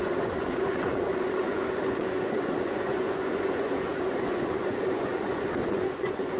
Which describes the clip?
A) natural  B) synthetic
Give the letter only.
B